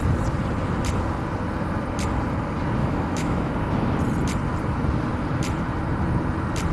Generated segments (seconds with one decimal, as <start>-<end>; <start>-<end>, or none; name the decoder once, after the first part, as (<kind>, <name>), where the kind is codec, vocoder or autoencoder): 2.8-3.5 (autoencoder, DAC-VAE)